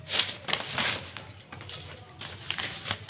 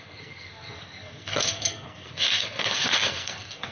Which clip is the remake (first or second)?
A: second